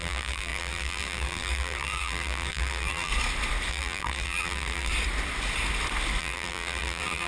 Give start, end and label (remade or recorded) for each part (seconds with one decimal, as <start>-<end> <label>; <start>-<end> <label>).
0.0-3.1 remade; 3.1-3.7 recorded; 3.7-4.9 remade; 4.9-6.2 recorded; 6.2-7.3 remade